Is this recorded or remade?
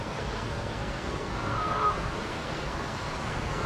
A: remade